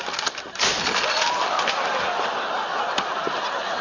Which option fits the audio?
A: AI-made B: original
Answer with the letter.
B